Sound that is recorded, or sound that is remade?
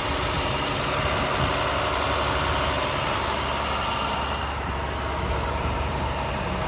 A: recorded